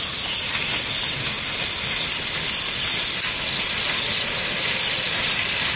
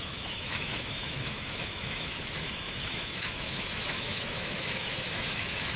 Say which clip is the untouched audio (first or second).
first